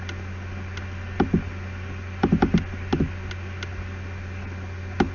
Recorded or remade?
recorded